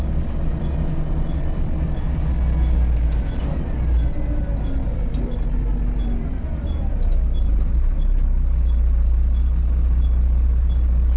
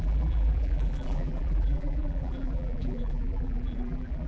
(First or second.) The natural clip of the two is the first